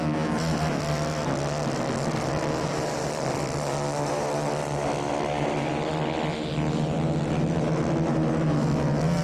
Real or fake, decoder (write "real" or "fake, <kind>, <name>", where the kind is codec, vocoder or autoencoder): real